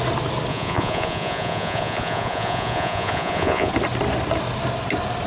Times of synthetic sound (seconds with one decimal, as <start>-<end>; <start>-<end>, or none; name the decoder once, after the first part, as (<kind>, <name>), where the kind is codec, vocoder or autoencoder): 0.5-3.7 (vocoder, Vocos)